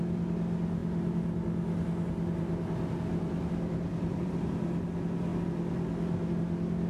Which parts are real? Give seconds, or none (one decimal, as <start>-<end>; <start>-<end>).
0.0-3.9; 4.6-6.9